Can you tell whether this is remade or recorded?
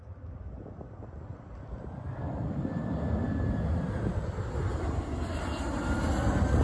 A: recorded